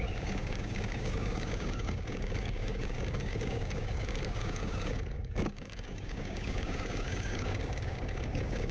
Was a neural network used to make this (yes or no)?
yes